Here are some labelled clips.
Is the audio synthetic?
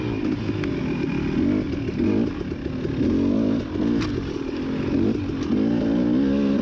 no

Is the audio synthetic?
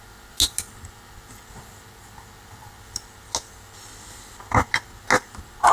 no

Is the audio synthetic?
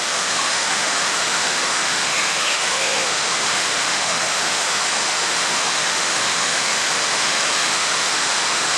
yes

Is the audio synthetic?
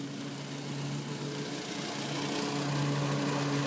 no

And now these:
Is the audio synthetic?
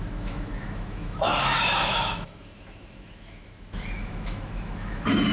yes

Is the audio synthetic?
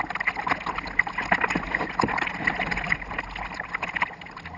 no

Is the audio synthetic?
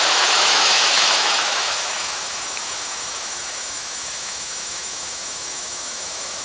yes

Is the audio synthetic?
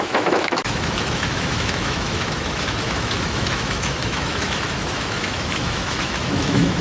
yes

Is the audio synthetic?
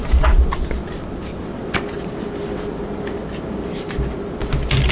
no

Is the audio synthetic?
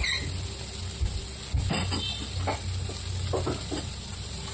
no